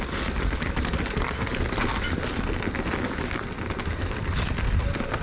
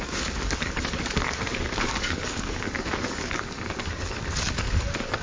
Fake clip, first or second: second